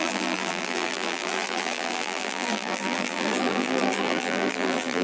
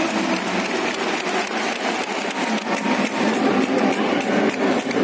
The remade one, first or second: first